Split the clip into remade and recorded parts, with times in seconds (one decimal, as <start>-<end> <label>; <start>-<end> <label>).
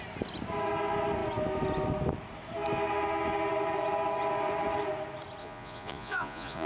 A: 0.0-5.4 recorded; 5.4-6.7 remade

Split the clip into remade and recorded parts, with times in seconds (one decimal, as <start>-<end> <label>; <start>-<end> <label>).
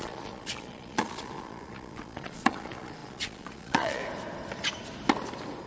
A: 0.0-4.0 remade; 4.0-5.7 recorded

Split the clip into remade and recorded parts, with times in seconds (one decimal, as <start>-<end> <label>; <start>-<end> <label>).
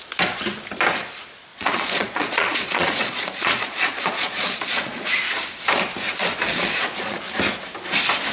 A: 0.0-1.5 recorded; 1.5-5.1 remade; 5.1-6.5 recorded; 6.5-7.2 remade; 7.2-8.3 recorded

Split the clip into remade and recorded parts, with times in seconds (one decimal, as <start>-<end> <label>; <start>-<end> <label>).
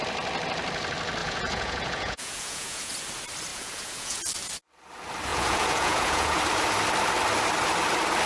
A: 0.0-1.2 recorded; 1.2-2.9 remade; 2.9-3.5 recorded; 3.5-4.2 remade; 4.2-5.3 recorded; 5.3-6.4 remade; 6.4-8.3 recorded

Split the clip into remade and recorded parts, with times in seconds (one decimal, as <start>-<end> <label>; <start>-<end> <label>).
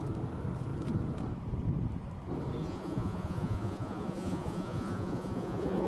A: 0.0-2.6 recorded; 2.6-5.9 remade